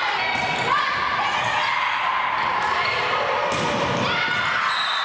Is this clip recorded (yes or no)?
yes